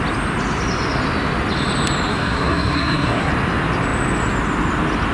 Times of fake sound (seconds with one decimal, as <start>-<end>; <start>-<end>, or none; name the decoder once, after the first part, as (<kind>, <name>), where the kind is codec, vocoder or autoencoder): 2.1-3.3 (codec, SNAC)